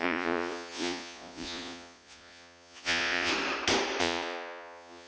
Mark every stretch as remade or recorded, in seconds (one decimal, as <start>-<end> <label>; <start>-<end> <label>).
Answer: 0.0-3.3 remade; 3.3-4.0 recorded; 4.0-5.1 remade